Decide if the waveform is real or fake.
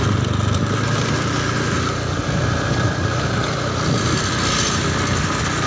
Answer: real